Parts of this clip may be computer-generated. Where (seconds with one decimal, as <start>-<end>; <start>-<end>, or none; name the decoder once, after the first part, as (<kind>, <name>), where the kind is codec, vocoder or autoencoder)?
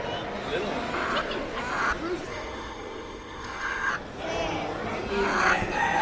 2.3-3.9 (codec, SNAC)